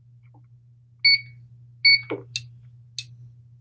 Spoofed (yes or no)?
no